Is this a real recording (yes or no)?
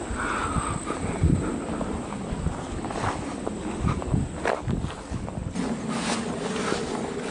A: yes